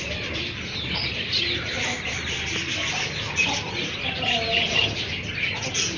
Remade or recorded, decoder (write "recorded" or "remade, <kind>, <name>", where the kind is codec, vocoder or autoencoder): recorded